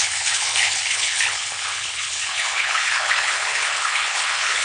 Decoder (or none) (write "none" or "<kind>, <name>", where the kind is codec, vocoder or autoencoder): codec, HILCodec